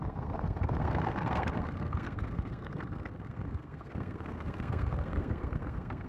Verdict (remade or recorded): remade